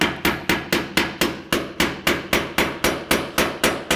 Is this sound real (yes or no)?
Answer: yes